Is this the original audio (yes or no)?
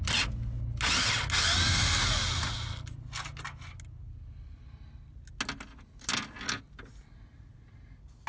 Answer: yes